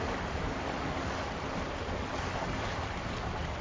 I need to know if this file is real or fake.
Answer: real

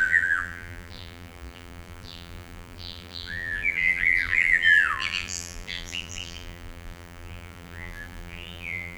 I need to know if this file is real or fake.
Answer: fake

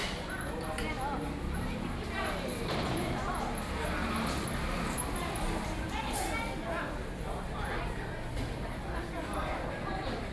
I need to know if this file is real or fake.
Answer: real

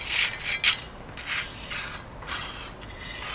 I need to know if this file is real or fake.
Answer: real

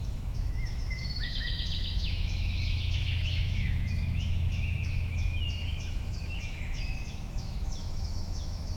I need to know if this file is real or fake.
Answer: fake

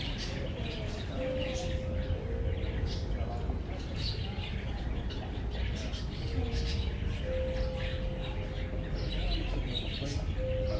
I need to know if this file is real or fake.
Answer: real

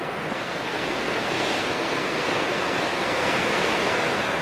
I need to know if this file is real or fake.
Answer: fake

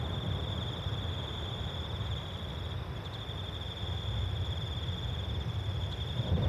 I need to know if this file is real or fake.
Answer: real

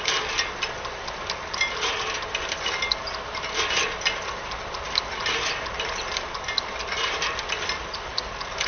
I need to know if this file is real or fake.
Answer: real